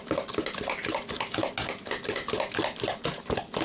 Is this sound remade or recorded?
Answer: recorded